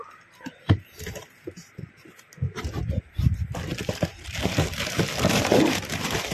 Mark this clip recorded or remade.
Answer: remade